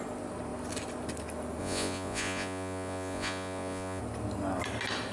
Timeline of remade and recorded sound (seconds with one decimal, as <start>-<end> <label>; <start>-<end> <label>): 0.0-1.6 recorded; 1.6-4.0 remade; 4.0-5.1 recorded